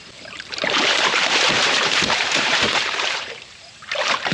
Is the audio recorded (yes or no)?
no